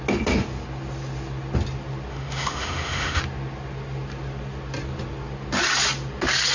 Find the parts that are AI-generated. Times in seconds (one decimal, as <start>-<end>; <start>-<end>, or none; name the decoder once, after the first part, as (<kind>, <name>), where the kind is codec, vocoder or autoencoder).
2.1-3.2 (autoencoder, DAC-VAE)